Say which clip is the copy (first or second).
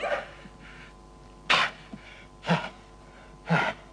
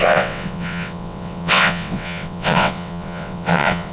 second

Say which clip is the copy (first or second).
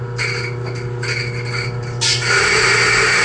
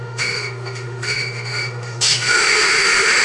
second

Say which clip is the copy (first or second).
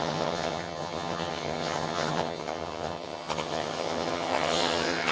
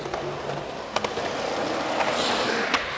first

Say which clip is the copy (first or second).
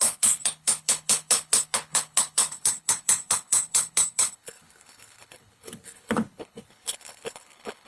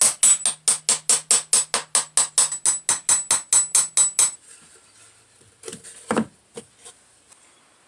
first